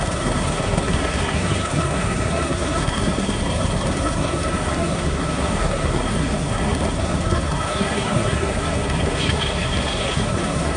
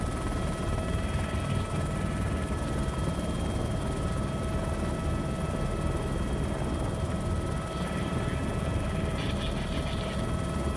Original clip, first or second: second